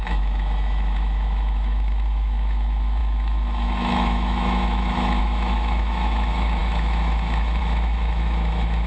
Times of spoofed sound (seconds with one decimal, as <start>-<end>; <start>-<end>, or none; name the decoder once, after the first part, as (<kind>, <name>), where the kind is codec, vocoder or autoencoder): 0.0-8.9 (autoencoder, DAC-VAE)